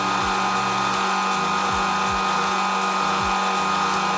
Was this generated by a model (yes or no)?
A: no